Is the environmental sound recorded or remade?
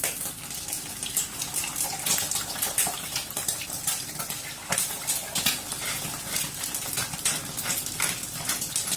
recorded